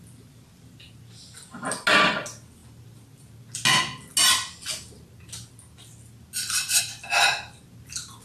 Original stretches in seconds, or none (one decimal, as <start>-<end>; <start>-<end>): 0.0-8.2